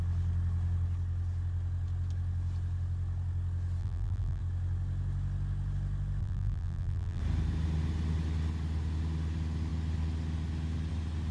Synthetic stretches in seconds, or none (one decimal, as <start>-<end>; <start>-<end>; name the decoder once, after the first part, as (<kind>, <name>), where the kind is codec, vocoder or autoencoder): 3.8-4.4 (vocoder, BigVGAN v2); 6.2-7.2